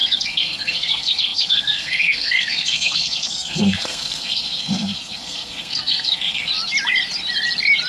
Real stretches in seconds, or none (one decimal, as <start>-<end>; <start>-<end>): 6.5-7.9

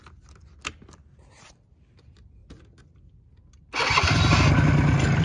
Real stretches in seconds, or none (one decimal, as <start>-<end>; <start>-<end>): 0.0-5.2

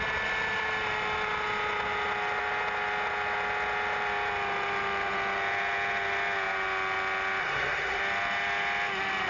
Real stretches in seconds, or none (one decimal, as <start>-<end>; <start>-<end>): 0.0-7.4; 8.0-9.3

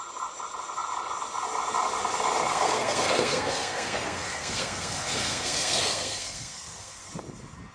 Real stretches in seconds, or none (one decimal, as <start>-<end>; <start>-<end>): 0.0-2.5; 7.1-7.7